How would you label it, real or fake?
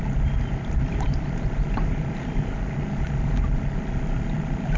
real